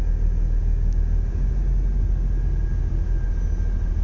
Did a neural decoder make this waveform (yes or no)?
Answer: no